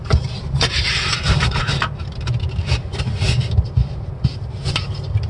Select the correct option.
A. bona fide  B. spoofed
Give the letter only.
B